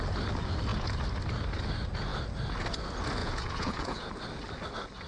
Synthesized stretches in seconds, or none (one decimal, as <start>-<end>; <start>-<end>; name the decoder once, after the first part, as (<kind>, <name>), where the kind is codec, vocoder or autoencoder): 3.2-4.1 (vocoder, Vocos)